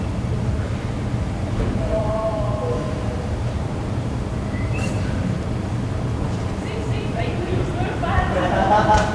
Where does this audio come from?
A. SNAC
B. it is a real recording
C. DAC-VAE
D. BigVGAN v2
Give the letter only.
D